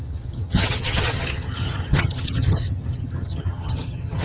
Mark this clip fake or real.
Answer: fake